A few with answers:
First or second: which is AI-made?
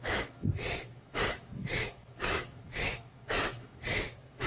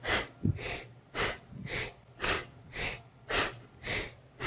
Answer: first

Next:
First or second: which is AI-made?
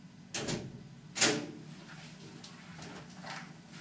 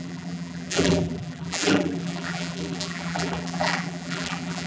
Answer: second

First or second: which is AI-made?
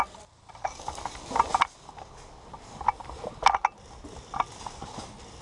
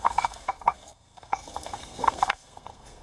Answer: second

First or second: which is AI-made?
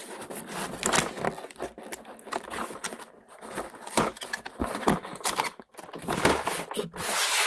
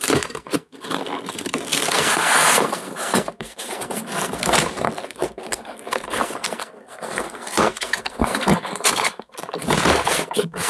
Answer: second